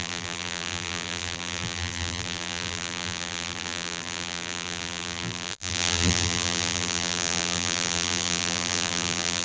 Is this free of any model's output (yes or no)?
no